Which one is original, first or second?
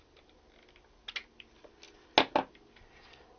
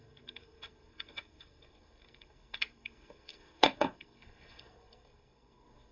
first